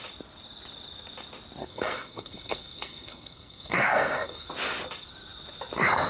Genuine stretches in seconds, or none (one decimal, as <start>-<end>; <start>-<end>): 0.0-1.6; 4.5-6.1